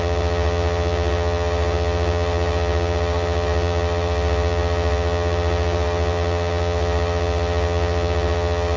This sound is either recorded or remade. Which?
remade